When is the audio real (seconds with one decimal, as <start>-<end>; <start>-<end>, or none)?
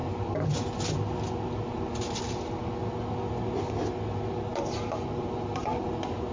0.0-6.3